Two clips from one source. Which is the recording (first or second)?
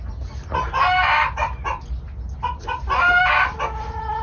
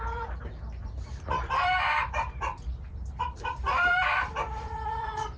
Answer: first